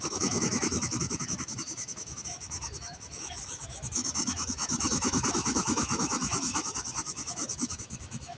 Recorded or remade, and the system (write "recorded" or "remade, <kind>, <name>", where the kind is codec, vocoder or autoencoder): remade, autoencoder, DAC-VAE